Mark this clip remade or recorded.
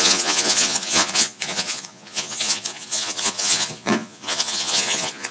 remade